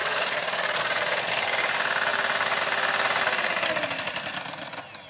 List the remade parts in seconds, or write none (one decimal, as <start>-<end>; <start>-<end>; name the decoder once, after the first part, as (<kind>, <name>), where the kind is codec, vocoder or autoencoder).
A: 0.0-1.3 (vocoder, Vocos)